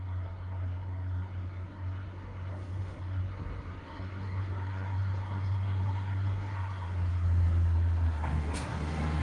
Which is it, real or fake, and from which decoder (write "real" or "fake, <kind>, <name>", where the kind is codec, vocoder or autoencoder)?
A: fake, codec, SNAC